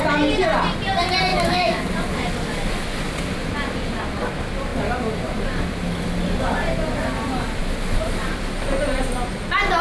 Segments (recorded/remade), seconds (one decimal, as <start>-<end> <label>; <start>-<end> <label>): 0.0-1.3 recorded; 1.3-1.8 remade; 1.8-9.8 recorded